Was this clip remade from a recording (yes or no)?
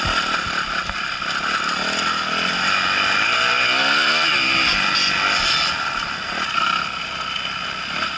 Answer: no